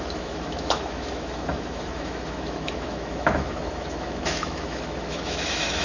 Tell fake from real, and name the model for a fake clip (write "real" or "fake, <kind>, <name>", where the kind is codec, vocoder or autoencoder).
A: fake, autoencoder, DAC-VAE